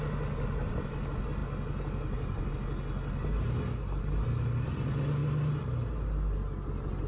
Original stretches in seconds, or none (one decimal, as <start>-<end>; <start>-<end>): 0.0-7.1